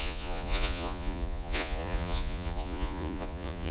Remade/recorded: remade